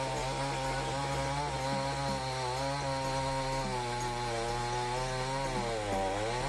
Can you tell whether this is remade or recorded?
recorded